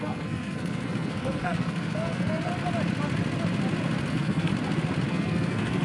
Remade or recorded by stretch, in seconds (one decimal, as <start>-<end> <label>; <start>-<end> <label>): 0.0-2.5 remade; 2.5-4.1 recorded; 4.1-4.5 remade; 4.5-5.1 recorded; 5.1-5.8 remade